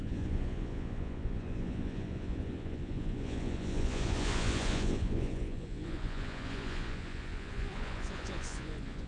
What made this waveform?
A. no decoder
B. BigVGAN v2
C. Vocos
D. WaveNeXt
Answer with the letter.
C